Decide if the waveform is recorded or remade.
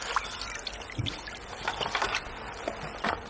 recorded